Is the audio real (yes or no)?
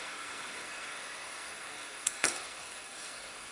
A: no